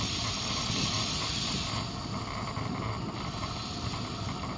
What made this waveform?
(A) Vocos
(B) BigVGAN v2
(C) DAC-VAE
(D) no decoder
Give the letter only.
D